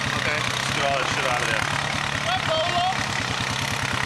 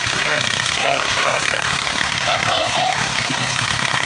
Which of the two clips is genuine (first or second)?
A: first